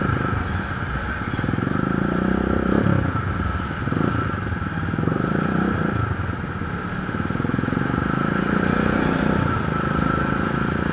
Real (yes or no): yes